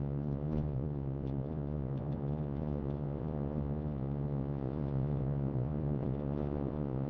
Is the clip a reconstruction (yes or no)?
yes